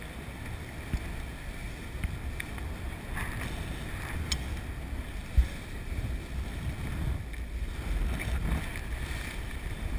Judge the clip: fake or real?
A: real